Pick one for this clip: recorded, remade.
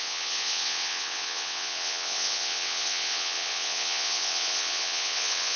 remade